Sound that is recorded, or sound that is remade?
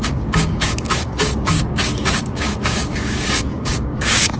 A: remade